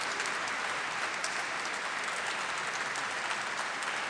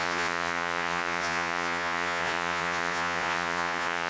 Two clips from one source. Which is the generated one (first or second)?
second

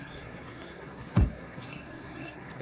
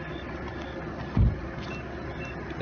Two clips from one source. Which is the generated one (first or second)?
first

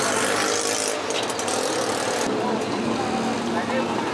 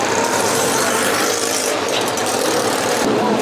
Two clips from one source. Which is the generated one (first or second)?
second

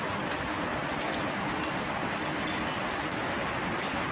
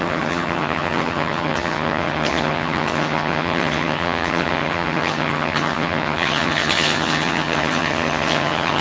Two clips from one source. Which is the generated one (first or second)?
second